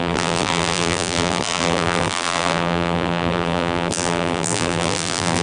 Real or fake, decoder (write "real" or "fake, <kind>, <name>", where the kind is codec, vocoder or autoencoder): fake, vocoder, BigVGAN v2